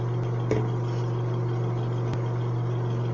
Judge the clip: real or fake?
real